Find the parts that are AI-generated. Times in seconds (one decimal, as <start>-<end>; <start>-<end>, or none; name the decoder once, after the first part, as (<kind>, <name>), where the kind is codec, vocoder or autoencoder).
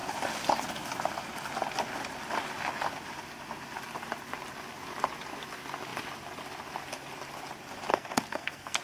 7.9-8.8 (codec, SNAC)